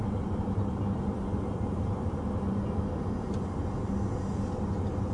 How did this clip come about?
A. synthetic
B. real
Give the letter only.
B